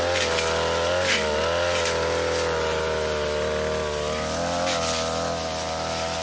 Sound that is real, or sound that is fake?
real